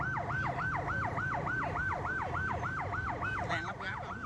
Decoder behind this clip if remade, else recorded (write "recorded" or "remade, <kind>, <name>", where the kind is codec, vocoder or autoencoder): remade, vocoder, BigVGAN v2